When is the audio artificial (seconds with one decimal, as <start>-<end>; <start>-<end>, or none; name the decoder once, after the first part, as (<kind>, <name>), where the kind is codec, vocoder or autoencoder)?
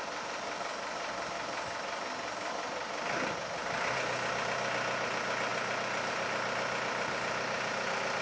none